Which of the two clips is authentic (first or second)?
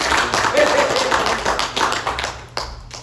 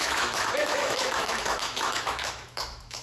first